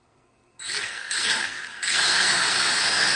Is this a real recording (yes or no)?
no